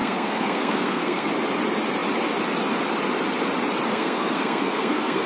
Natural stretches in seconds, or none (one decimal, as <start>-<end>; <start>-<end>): 1.3-3.9